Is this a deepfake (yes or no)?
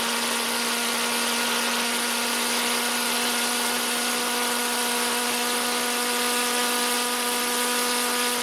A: no